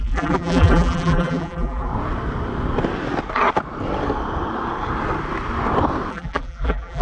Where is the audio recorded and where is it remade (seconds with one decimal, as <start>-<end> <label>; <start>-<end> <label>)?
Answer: 0.0-1.9 remade; 1.9-6.1 recorded; 6.1-7.0 remade